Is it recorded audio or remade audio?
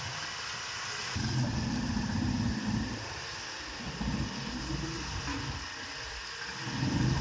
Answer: recorded